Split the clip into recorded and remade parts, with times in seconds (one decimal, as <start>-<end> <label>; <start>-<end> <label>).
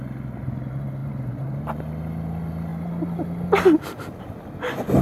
0.0-1.0 recorded; 1.0-1.6 remade; 1.6-5.0 recorded